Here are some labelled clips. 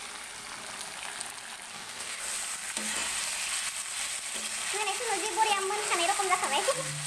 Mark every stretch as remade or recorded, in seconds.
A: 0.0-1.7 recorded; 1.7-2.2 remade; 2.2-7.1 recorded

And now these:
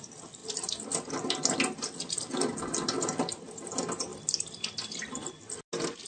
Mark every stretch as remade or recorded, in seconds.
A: 0.0-6.1 recorded

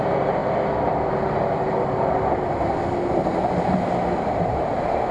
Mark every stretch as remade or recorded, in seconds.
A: 0.0-5.1 recorded

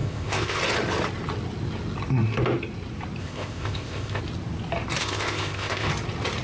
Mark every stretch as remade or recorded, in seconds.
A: 0.0-0.6 remade; 0.6-3.2 recorded; 3.2-4.2 remade; 4.2-5.0 recorded; 5.0-5.9 remade; 5.9-6.4 recorded

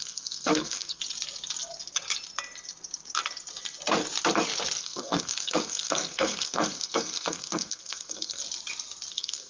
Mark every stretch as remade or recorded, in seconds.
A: 0.0-1.0 remade; 1.0-4.8 recorded; 4.8-8.4 remade; 8.4-9.1 recorded; 9.1-9.5 remade

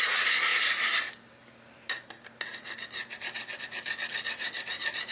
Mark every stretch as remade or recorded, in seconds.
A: 0.0-5.1 recorded

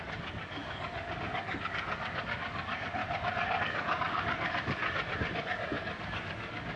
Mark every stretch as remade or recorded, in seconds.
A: 0.0-3.0 remade; 3.0-3.6 recorded; 3.6-4.8 remade; 4.8-5.4 recorded; 5.4-6.8 remade